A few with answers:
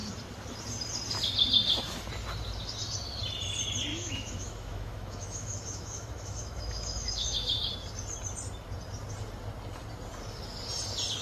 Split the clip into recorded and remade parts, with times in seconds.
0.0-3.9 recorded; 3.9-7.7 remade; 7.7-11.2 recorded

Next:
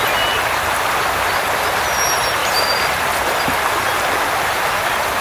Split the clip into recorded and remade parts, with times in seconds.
0.0-5.2 recorded

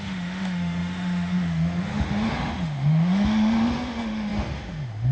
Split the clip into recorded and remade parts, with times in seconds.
0.0-5.1 remade

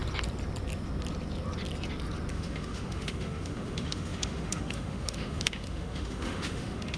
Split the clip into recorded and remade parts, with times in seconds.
0.0-2.3 recorded; 2.3-7.0 remade

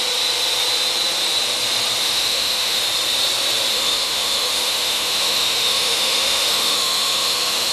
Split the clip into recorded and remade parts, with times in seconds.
0.0-2.0 recorded; 2.0-2.8 remade; 2.8-3.7 recorded; 3.7-7.7 remade

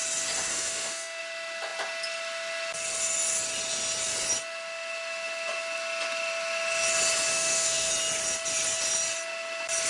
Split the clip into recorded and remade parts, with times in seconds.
0.0-0.5 recorded; 0.5-1.2 remade; 1.2-7.3 recorded; 7.3-7.9 remade; 7.9-9.9 recorded

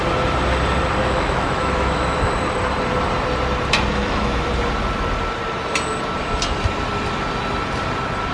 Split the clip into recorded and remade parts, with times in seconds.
0.0-1.0 recorded; 1.0-2.3 remade; 2.3-3.9 recorded; 3.9-4.5 remade; 4.5-8.3 recorded

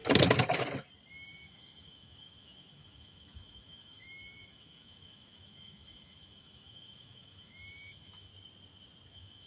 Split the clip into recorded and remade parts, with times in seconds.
0.0-1.1 recorded; 1.1-8.3 remade; 8.3-9.1 recorded; 9.1-9.5 remade